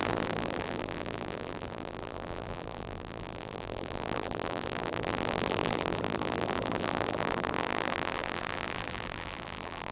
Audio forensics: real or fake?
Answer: fake